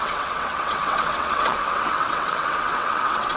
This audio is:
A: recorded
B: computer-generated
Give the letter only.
B